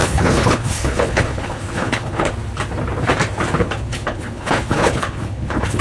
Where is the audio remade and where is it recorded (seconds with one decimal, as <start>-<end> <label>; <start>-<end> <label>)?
0.0-2.3 remade; 2.3-3.6 recorded; 3.6-5.8 remade